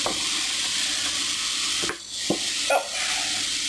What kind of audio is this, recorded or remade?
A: recorded